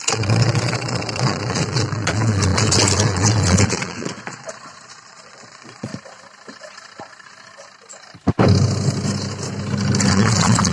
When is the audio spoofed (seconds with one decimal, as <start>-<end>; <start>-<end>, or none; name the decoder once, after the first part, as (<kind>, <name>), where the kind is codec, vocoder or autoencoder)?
0.0-5.9 (vocoder, Vocos); 10.1-10.7